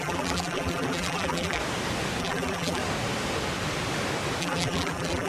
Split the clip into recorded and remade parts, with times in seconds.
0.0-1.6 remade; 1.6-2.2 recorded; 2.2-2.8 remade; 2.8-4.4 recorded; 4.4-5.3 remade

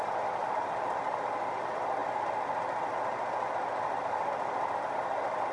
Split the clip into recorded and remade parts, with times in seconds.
0.0-0.4 recorded; 0.4-0.9 remade; 0.9-5.5 recorded

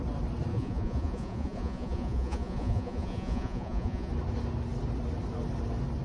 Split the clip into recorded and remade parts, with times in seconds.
0.0-0.5 recorded; 0.5-4.1 remade; 4.1-6.0 recorded

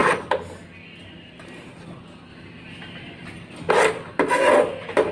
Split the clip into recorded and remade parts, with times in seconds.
0.0-5.1 recorded

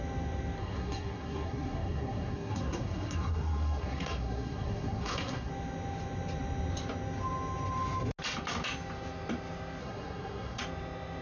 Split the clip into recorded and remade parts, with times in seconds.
0.0-0.6 recorded; 0.6-5.5 remade; 5.5-9.8 recorded; 9.8-10.6 remade; 10.6-11.2 recorded